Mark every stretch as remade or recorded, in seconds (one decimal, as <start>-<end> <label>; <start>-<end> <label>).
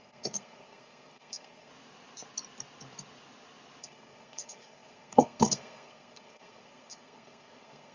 0.0-1.7 remade; 1.7-3.8 recorded; 3.8-7.9 remade